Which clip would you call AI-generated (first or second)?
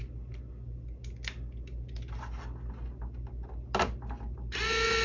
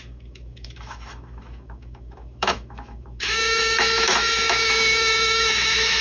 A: second